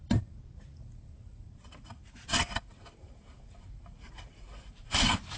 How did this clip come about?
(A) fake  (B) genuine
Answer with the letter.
A